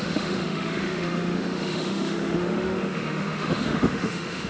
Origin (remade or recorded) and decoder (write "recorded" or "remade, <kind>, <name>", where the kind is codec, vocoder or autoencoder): remade, autoencoder, DAC-VAE